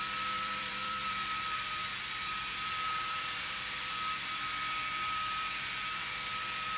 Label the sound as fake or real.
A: fake